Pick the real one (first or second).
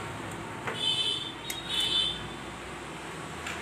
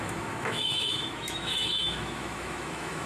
first